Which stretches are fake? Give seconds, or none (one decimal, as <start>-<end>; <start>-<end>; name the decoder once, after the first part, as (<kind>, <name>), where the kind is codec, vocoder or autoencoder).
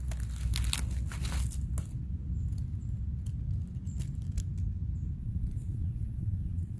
5.2-6.8 (vocoder, Vocos)